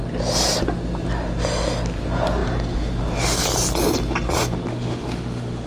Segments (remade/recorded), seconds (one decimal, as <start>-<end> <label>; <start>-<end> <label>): 0.0-4.7 recorded; 4.7-5.7 remade